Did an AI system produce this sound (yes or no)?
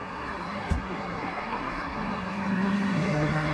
yes